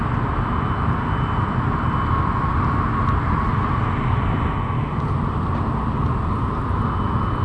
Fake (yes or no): no